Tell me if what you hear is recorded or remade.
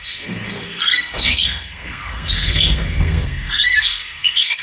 remade